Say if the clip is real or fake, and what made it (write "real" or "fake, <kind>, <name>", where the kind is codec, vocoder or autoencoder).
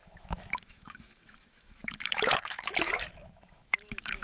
fake, autoencoder, DAC-VAE